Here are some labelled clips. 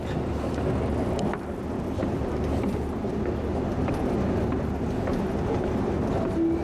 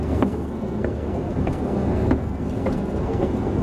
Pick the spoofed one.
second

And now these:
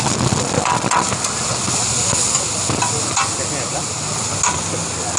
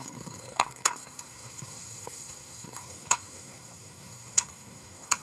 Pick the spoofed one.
second